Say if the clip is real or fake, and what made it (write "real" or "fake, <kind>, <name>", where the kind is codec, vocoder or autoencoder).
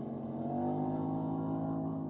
real